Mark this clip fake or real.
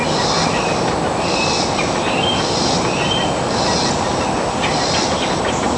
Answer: real